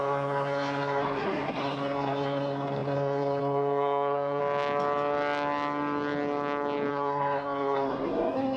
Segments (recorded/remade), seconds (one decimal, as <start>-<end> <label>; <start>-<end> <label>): 0.0-4.4 remade; 4.4-6.9 recorded; 6.9-8.6 remade